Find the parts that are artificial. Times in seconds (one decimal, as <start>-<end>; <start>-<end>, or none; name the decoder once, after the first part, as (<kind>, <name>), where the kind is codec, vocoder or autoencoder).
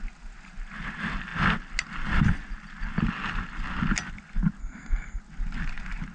4.6-5.2 (codec, SNAC)